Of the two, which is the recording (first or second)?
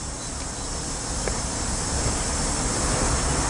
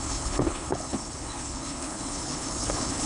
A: first